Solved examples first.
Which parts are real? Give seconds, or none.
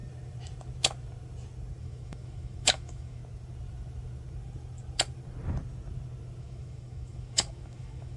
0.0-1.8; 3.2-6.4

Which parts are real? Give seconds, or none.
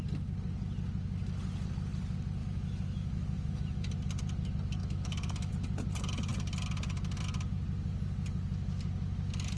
0.0-2.4; 3.9-4.8; 5.5-9.6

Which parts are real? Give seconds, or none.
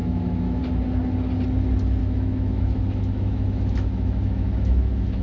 0.6-2.0